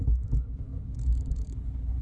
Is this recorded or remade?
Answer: remade